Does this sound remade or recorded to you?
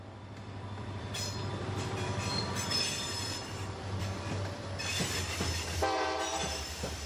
remade